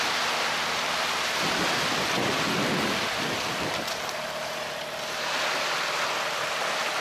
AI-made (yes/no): no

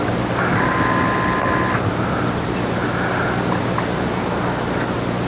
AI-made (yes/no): no